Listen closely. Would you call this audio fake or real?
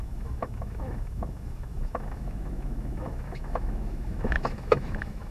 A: fake